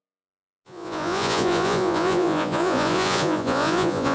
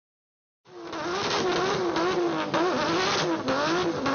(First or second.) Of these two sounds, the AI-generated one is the first